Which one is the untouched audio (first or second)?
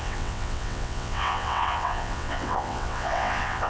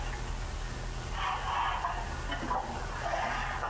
second